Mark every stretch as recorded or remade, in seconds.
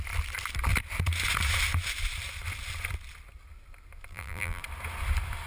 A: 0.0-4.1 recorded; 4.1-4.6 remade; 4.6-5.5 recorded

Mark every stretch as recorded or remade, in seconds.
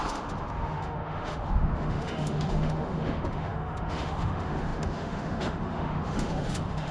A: 0.0-6.9 remade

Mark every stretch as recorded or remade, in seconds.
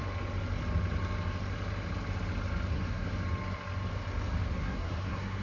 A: 0.0-2.7 recorded; 2.7-3.1 remade; 3.1-4.5 recorded; 4.5-5.4 remade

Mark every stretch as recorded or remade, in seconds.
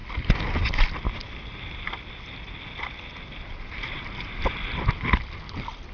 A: 0.0-5.9 recorded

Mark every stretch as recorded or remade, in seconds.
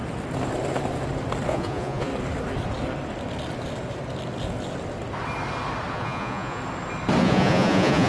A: 0.0-1.5 recorded; 1.5-2.1 remade; 2.1-5.9 recorded; 5.9-6.6 remade; 6.6-7.2 recorded; 7.2-8.1 remade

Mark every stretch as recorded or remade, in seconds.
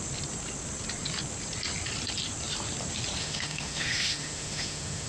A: 0.0-3.2 recorded; 3.2-5.1 remade